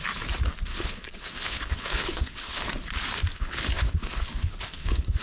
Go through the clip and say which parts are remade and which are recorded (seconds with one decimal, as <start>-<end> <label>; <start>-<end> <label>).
0.0-0.7 recorded; 0.7-2.6 remade; 2.6-3.3 recorded; 3.3-5.2 remade